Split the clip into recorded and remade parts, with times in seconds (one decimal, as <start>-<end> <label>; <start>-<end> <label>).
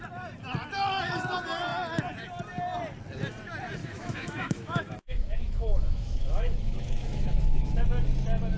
0.0-3.8 recorded; 3.8-7.8 remade; 7.8-8.6 recorded